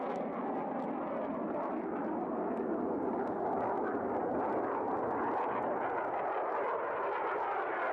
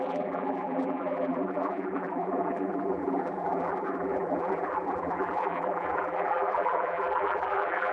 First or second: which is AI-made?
second